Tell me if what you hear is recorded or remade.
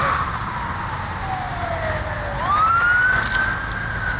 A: recorded